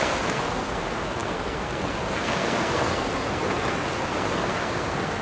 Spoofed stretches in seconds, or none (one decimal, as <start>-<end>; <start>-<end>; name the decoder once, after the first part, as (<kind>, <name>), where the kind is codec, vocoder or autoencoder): 0.0-5.2 (codec, SNAC)